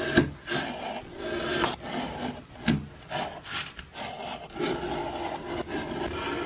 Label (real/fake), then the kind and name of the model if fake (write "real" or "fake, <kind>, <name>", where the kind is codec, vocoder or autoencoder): real